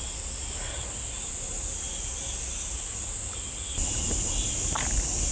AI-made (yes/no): no